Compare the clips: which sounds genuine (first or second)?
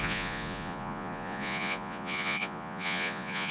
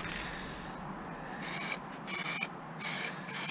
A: second